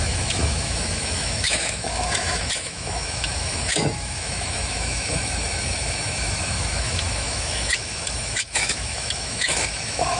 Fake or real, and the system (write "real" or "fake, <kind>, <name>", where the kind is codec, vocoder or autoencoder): fake, autoencoder, DAC-VAE